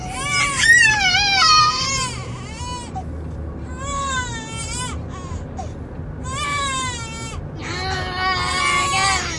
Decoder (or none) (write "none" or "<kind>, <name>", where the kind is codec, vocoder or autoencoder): none